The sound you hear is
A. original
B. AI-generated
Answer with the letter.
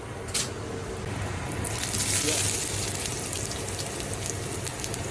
A